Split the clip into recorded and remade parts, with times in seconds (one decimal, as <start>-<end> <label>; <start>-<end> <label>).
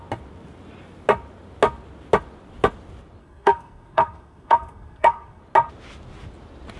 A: 0.0-3.2 recorded; 3.2-5.4 remade; 5.4-6.8 recorded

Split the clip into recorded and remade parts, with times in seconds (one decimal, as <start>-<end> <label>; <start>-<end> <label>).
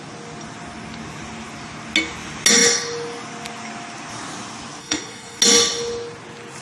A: 0.0-4.8 recorded; 4.8-5.4 remade; 5.4-6.6 recorded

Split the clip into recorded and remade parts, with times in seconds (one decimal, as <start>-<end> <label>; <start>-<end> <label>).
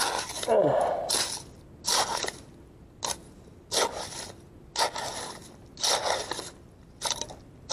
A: 0.0-7.7 recorded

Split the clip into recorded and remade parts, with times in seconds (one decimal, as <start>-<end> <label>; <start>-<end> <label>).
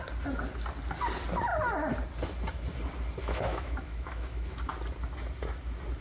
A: 0.0-3.2 recorded; 3.2-4.7 remade; 4.7-6.0 recorded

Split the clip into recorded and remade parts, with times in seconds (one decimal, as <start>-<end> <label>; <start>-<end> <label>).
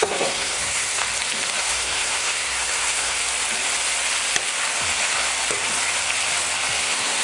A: 0.0-1.0 remade; 1.0-1.6 recorded; 1.6-3.2 remade; 3.2-6.8 recorded; 6.8-7.2 remade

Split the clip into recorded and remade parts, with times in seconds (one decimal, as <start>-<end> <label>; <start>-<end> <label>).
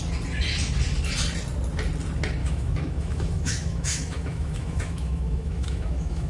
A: 0.0-2.4 recorded; 2.4-6.3 remade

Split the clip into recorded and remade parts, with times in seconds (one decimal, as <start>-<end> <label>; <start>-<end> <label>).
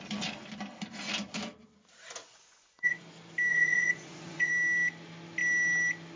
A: 0.0-2.2 recorded; 2.2-3.0 remade; 3.0-3.5 recorded; 3.5-4.5 remade; 4.5-6.2 recorded